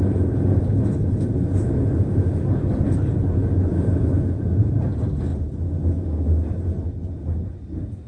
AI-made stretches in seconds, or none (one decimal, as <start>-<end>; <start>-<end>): none